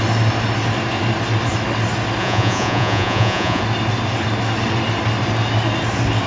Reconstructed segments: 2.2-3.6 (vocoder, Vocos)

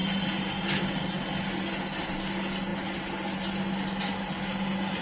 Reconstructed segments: none

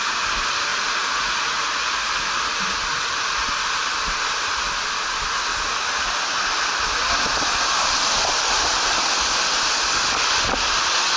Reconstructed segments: 0.7-2.1 (vocoder, Vocos)

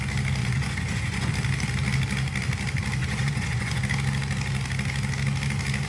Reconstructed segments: 0.4-1.3 (vocoder, Vocos); 3.0-3.8

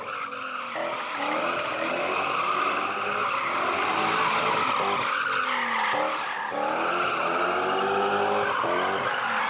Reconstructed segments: none

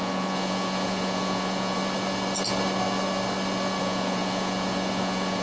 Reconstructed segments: 0.0-1.8 (vocoder, Vocos); 3.8-5.4

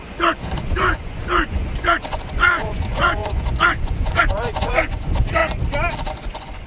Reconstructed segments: 0.0-5.4 (vocoder, Vocos); 6.1-6.7